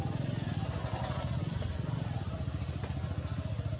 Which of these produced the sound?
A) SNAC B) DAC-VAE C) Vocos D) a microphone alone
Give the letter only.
D